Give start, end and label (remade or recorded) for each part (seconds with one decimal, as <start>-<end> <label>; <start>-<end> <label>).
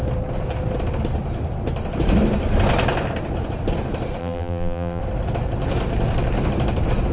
0.0-4.2 recorded; 4.2-5.0 remade; 5.0-7.1 recorded